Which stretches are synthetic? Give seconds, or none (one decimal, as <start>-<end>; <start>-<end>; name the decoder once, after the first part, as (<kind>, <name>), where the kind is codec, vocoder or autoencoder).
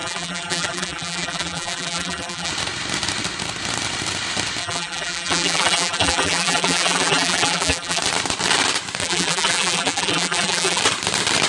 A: 0.0-2.5 (vocoder, BigVGAN v2); 4.6-8.0; 9.0-10.8